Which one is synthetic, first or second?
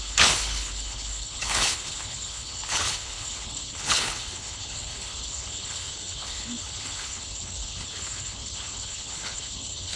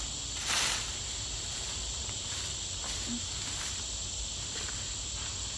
first